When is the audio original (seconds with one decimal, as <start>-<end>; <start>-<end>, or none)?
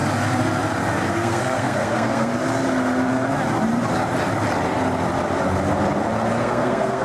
0.0-1.1; 2.3-6.4